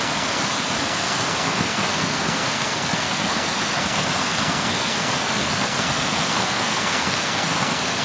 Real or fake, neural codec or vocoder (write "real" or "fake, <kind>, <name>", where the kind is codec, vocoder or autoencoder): fake, codec, SNAC